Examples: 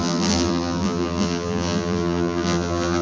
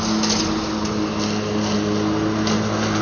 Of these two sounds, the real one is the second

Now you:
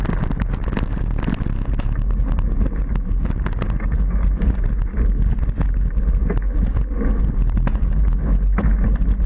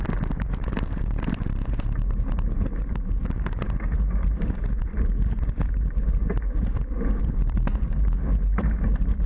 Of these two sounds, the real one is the first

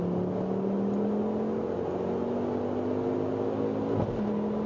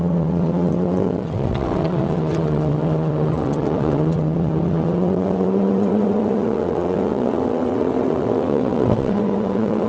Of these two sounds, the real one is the first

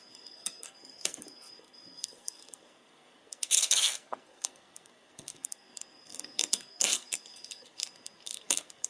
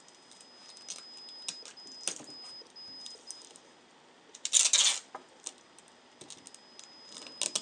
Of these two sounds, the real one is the second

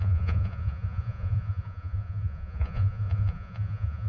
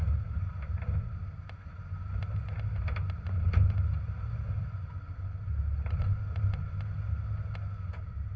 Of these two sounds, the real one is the second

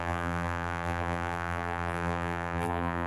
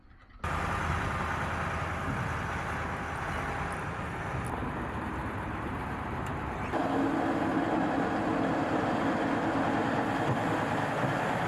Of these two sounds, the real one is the second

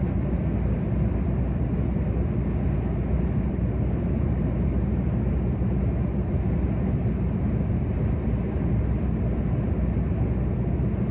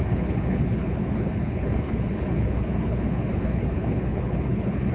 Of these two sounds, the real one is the first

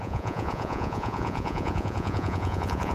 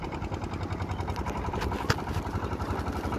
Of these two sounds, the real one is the second